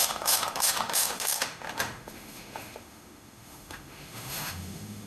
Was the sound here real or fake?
fake